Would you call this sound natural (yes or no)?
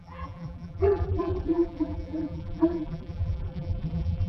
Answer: no